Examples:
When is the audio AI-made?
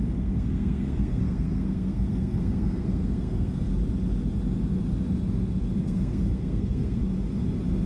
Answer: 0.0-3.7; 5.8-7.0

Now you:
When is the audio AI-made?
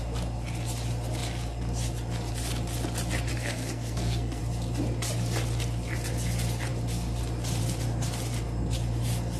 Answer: 3.3-4.4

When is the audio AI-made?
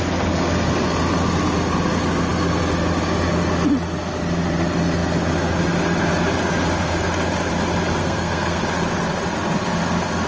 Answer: 8.0-8.6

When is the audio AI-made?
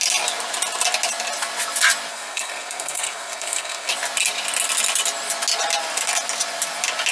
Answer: 2.1-3.9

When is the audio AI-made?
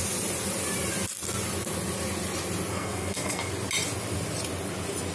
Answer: 2.7-3.5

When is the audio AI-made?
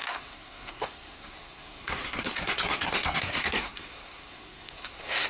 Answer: 0.0-5.3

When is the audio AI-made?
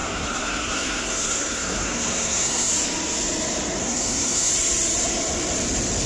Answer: 0.0-2.7; 3.8-4.5